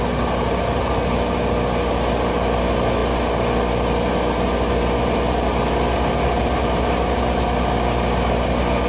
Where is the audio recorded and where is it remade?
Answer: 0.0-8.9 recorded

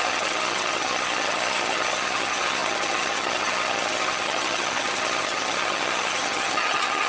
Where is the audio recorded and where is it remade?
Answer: 0.0-7.1 remade

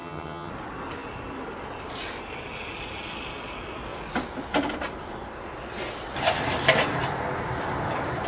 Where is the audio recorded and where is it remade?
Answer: 0.0-0.5 remade; 0.5-8.3 recorded